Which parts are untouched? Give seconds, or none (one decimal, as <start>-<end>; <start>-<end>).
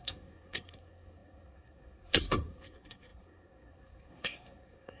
none